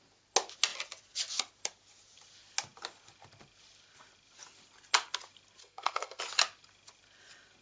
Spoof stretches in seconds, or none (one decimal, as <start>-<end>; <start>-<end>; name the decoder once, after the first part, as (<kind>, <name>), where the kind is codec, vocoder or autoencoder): 5.6-6.2 (codec, SNAC)